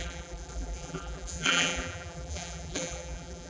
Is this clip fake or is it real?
fake